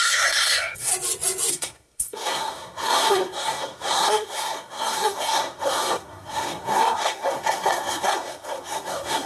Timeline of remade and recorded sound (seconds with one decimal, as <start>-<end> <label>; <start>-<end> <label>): 0.0-0.9 remade; 0.9-1.5 recorded; 1.5-9.3 remade